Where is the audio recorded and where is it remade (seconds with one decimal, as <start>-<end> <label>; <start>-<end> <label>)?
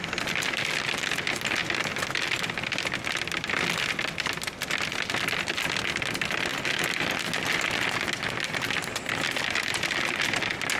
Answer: 0.0-10.8 recorded